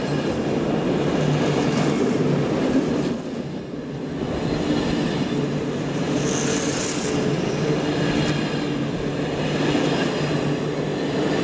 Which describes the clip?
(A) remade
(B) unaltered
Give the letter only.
B